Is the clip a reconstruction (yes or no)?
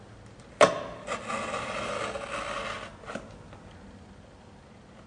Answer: no